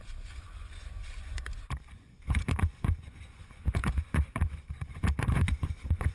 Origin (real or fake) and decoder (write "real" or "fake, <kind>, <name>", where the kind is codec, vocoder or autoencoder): fake, vocoder, Vocos